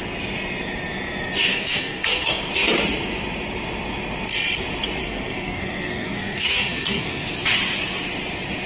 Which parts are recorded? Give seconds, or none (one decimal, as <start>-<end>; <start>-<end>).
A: 0.0-1.5; 2.5-5.0; 7.2-8.7